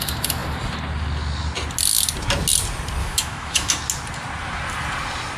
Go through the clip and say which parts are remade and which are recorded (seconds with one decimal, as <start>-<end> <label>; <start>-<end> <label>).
0.0-3.0 recorded; 3.0-3.7 remade; 3.7-5.4 recorded